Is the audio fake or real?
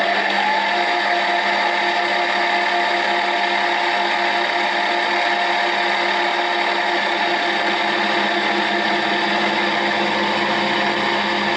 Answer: real